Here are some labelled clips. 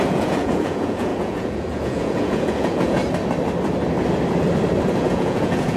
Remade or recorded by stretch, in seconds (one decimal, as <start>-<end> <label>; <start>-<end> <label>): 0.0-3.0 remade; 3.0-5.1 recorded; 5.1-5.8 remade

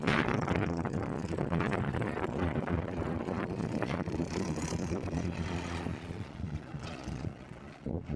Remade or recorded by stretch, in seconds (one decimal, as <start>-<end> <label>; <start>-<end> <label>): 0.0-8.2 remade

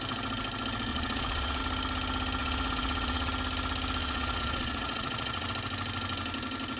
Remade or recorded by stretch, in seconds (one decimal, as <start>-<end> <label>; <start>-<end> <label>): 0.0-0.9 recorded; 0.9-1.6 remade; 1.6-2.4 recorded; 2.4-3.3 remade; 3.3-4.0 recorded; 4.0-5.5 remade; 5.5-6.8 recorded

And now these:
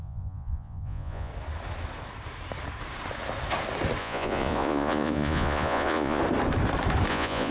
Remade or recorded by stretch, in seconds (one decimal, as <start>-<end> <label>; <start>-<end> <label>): 0.0-1.3 remade; 1.3-4.0 recorded; 4.0-6.2 remade; 6.2-7.1 recorded; 7.1-7.5 remade

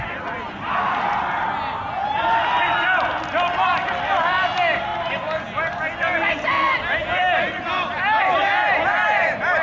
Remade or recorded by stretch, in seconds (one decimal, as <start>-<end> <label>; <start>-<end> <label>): 0.0-9.6 recorded